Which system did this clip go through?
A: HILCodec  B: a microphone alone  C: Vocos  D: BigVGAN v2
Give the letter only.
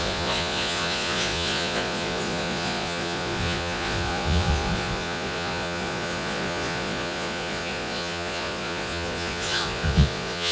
C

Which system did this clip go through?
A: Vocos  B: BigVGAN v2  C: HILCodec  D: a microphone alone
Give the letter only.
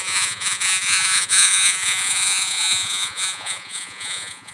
A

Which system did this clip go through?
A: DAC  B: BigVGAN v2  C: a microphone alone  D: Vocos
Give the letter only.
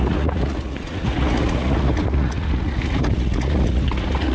D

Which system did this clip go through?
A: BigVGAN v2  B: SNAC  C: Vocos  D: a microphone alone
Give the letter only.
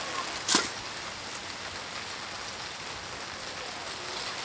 D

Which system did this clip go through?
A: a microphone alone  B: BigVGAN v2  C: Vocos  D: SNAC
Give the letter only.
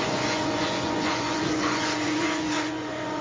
C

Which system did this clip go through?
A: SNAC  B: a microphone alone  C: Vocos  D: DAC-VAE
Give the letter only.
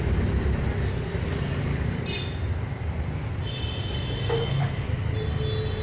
B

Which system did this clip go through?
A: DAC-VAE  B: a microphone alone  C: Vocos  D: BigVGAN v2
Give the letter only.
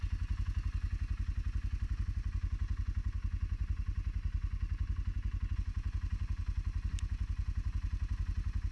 B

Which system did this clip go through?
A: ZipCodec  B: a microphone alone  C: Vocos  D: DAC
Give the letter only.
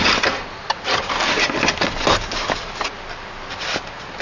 B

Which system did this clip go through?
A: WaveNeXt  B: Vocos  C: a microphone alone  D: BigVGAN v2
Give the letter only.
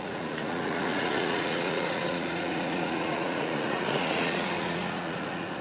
B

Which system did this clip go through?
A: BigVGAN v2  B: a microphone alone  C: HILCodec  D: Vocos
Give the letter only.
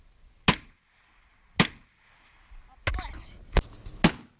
B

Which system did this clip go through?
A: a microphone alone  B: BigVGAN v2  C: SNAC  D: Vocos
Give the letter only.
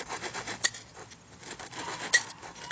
A